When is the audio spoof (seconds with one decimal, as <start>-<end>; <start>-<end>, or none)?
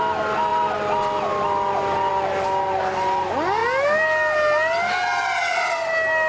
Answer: none